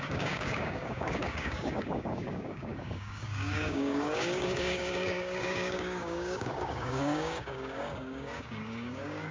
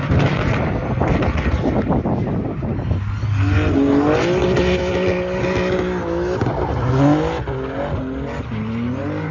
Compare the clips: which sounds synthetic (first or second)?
first